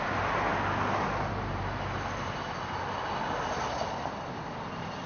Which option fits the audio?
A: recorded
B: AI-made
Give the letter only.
A